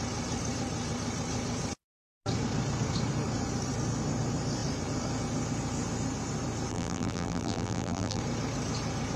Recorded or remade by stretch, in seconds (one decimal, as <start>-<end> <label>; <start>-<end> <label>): 0.0-6.7 recorded; 6.7-8.2 remade; 8.2-9.2 recorded